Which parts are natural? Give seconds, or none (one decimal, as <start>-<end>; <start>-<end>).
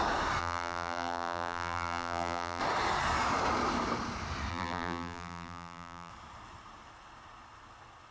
0.0-0.4; 2.6-4.5; 6.1-8.1